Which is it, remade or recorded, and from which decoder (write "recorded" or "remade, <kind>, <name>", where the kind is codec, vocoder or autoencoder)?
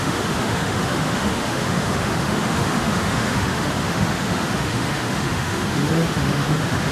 remade, autoencoder, DAC-VAE